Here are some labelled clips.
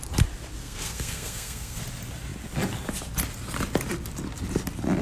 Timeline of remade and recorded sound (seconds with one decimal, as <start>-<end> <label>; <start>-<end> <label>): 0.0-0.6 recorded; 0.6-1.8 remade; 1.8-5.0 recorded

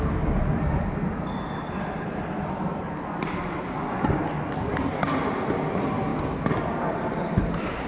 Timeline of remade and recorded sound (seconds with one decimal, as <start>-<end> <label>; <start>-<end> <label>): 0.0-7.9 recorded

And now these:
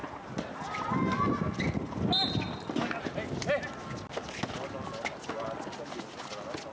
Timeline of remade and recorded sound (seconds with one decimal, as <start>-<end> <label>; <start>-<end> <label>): 0.0-6.7 recorded

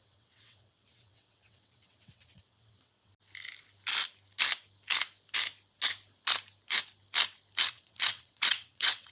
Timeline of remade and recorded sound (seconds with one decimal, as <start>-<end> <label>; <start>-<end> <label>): 0.0-3.1 remade; 3.1-7.7 recorded; 7.7-9.1 remade

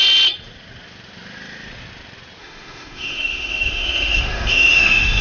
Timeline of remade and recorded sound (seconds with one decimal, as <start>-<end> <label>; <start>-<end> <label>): 0.0-2.4 recorded; 2.4-5.2 remade

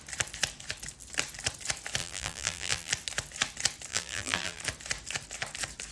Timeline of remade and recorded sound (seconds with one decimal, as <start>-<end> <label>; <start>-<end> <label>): 0.0-2.0 recorded; 2.0-2.9 remade; 2.9-3.9 recorded; 3.9-4.6 remade; 4.6-5.9 recorded

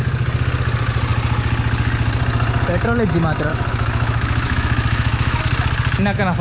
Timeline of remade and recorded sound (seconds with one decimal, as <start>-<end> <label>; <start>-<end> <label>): 0.0-3.5 recorded; 3.5-5.4 remade; 5.4-6.4 recorded

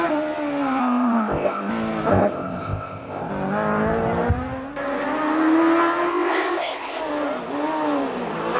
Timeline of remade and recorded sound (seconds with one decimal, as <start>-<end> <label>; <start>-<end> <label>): 0.0-0.8 recorded; 0.8-1.7 remade; 1.7-2.1 recorded; 2.1-3.3 remade; 3.3-6.1 recorded; 6.1-7.0 remade; 7.0-8.6 recorded